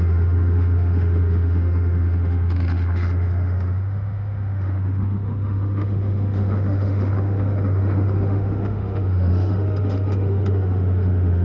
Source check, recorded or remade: remade